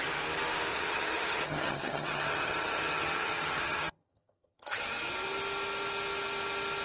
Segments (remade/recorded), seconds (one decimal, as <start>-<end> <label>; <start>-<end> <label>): 0.0-0.7 recorded; 0.7-4.8 remade; 4.8-6.8 recorded